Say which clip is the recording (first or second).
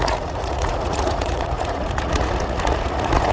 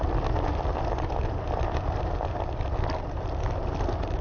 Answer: second